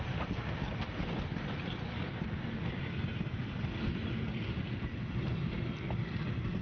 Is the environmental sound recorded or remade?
recorded